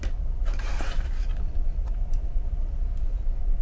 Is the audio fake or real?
real